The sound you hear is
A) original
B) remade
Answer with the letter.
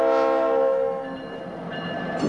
A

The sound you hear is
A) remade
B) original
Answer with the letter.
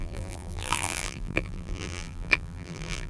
A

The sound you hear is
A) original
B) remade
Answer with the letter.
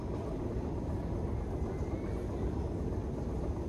A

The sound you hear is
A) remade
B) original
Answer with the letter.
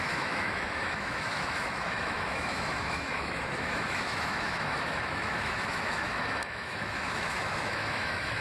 A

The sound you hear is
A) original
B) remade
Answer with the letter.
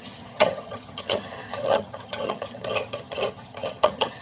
B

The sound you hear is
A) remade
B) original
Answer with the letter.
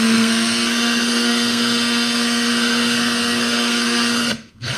A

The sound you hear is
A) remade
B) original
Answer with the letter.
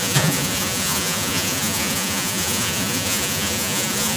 A